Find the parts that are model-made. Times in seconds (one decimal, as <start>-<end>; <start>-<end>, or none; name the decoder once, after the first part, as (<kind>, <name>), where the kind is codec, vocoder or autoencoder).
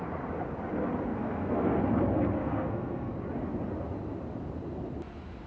1.1-1.8 (codec, SNAC); 2.4-3.1